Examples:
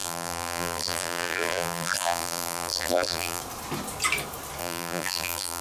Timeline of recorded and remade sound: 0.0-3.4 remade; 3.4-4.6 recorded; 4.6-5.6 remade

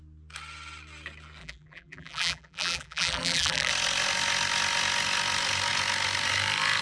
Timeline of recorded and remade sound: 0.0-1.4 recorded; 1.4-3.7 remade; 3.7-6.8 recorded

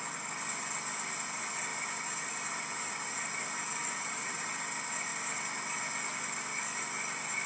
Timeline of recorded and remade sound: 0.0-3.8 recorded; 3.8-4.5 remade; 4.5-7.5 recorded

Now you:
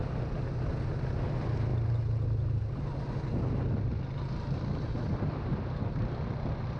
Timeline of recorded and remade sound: 0.0-6.8 recorded

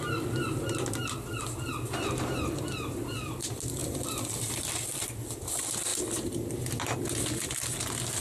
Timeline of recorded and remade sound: 0.0-8.2 recorded

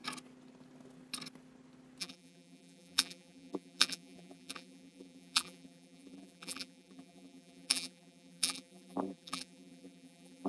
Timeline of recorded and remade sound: 0.0-2.0 recorded; 2.0-10.5 remade

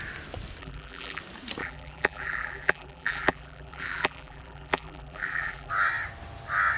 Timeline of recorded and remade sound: 0.0-0.6 recorded; 0.6-1.2 remade; 1.2-1.6 recorded; 1.6-5.7 remade; 5.7-6.8 recorded

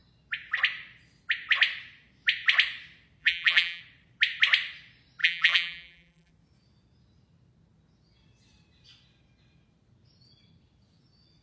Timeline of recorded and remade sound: 0.0-3.2 recorded; 3.2-3.8 remade; 3.8-5.2 recorded; 5.2-6.3 remade; 6.3-11.4 recorded